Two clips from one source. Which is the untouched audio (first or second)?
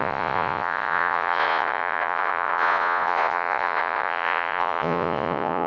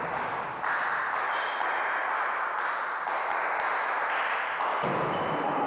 second